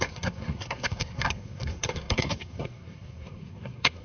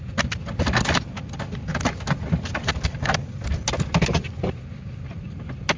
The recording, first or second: second